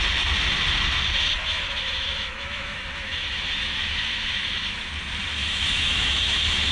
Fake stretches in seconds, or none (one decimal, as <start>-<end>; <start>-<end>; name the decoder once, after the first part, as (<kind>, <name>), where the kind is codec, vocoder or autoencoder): 1.4-4.9 (autoencoder, DAC-VAE); 5.4-6.7